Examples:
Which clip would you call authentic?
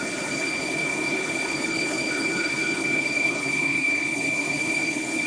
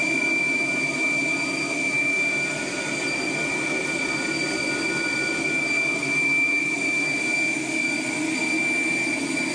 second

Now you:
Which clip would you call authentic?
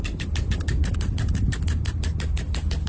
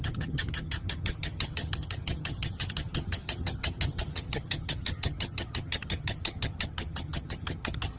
first